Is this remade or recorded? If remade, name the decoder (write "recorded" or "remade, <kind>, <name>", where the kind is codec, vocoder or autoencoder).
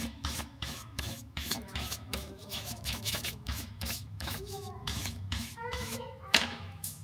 remade, autoencoder, DAC-VAE